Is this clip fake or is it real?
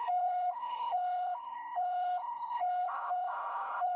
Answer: fake